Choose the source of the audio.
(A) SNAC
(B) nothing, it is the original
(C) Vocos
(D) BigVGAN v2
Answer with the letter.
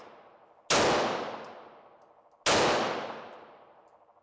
B